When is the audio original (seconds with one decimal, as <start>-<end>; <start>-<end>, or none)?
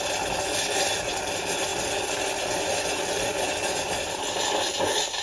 0.0-1.7; 4.8-5.2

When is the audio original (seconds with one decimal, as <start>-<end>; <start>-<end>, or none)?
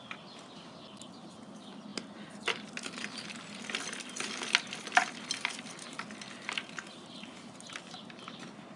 0.0-8.8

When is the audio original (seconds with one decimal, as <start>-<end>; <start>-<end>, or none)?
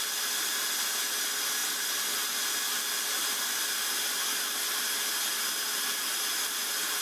0.0-7.0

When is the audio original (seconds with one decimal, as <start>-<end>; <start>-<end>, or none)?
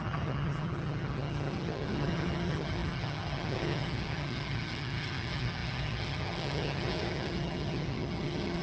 none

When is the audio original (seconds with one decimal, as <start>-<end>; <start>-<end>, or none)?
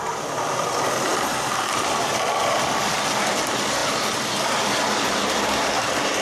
0.0-1.1; 3.3-6.2